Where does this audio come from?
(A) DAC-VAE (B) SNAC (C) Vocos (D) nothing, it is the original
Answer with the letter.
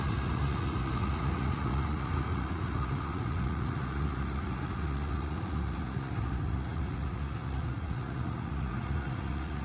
C